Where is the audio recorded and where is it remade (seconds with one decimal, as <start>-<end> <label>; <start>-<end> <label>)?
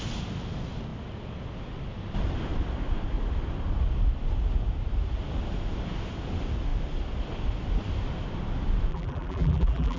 0.0-8.9 recorded; 8.9-10.0 remade